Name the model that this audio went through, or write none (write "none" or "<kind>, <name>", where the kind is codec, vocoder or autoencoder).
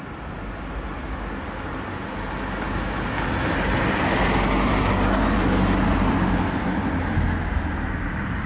none